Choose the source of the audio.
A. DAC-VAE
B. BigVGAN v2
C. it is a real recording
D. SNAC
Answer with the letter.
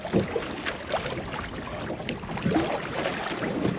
C